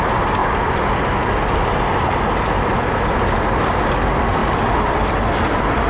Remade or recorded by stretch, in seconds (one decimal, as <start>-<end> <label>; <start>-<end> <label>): 0.0-0.4 recorded; 0.4-3.9 remade; 3.9-4.4 recorded; 4.4-5.9 remade